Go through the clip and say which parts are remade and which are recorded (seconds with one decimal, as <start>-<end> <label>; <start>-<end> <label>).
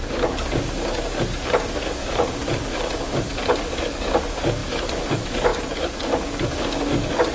0.0-7.3 remade